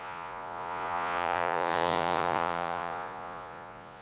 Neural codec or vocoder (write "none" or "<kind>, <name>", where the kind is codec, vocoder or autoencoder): vocoder, Vocos